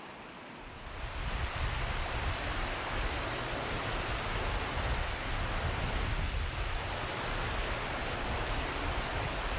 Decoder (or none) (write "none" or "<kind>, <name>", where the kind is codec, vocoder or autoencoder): none